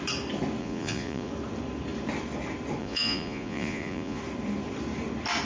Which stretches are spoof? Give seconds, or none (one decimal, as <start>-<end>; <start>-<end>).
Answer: 0.6-1.3; 2.8-4.2